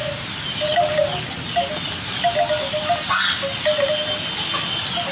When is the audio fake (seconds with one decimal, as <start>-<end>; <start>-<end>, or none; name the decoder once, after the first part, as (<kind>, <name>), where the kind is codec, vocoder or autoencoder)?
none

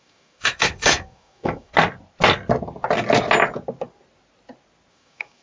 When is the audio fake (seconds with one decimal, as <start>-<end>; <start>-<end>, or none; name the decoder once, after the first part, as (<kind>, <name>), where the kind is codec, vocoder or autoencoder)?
0.0-1.7 (autoencoder, DAC-VAE); 4.9-5.4

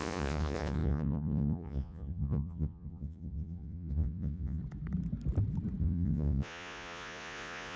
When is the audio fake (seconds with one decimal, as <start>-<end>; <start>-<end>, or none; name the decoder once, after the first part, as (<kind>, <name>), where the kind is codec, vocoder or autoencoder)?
0.0-4.6 (vocoder, Vocos); 5.8-7.8